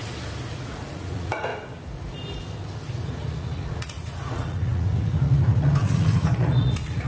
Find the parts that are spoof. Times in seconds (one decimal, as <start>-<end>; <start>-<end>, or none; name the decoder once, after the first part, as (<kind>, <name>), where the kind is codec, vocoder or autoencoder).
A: 0.5-1.5 (vocoder, Vocos); 2.9-7.1